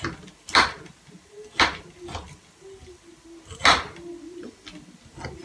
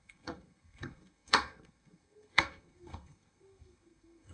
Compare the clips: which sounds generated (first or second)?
second